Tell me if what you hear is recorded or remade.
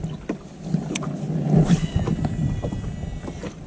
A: recorded